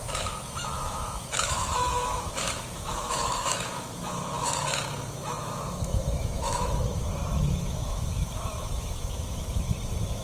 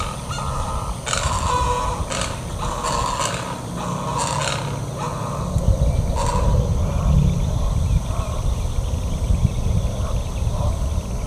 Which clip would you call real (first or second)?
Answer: second